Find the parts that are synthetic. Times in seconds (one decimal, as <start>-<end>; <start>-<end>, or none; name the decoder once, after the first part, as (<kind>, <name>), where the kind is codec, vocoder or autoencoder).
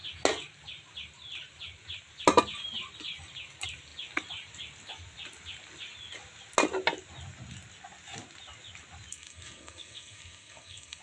9.1-11.0 (codec, SNAC)